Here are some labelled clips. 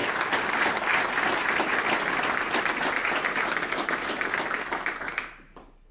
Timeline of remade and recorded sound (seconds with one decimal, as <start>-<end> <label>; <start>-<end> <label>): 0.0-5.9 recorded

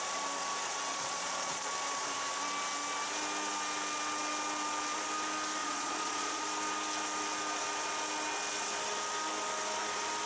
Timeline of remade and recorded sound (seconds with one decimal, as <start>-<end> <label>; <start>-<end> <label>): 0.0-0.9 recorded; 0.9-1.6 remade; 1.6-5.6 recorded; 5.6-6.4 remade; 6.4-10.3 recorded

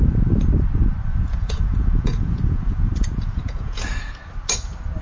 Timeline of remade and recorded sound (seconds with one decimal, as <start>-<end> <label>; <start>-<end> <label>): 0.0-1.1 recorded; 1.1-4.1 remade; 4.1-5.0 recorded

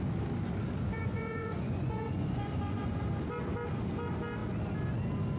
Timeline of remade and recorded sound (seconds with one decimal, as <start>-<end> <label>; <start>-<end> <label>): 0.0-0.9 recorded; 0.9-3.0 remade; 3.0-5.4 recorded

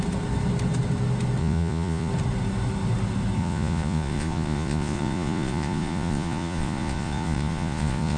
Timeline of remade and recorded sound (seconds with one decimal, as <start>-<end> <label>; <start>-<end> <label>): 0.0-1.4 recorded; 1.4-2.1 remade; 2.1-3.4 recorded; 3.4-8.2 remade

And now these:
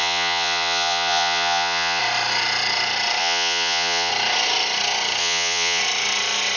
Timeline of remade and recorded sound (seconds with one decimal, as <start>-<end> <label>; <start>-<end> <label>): 0.0-2.0 remade; 2.0-3.2 recorded; 3.2-4.1 remade; 4.1-5.2 recorded; 5.2-5.8 remade; 5.8-6.6 recorded

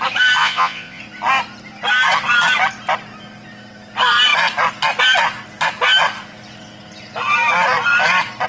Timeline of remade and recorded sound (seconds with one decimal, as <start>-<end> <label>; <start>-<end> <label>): 0.0-0.4 recorded; 0.4-1.0 remade; 1.0-8.5 recorded